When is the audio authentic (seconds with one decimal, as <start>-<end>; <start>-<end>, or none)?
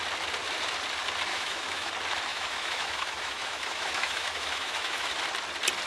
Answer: 0.0-1.3; 1.9-2.3; 5.1-5.9